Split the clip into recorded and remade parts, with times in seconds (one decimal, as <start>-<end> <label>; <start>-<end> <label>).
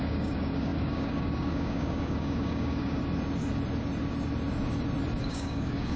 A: 0.0-3.0 remade; 3.0-5.2 recorded; 5.2-6.0 remade